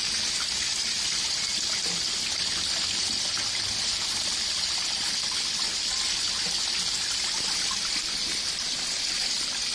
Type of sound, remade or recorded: recorded